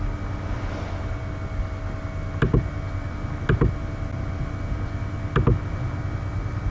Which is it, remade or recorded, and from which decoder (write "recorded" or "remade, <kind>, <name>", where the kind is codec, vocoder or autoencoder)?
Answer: recorded